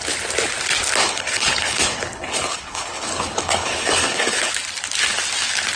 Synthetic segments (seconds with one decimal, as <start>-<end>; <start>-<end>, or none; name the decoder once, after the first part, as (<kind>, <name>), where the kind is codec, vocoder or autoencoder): 1.0-4.5 (codec, HILCodec)